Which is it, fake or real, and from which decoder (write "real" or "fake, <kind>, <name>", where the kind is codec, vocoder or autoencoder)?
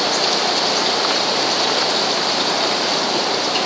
real